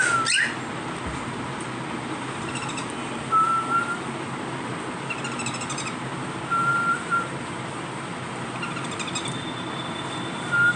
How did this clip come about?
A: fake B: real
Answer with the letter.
B